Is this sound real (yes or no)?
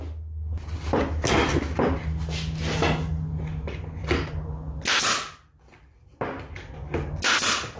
yes